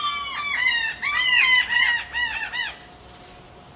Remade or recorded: recorded